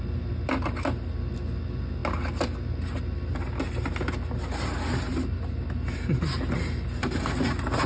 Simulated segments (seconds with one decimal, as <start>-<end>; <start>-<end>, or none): none